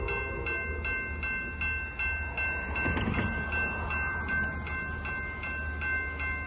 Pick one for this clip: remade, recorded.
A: recorded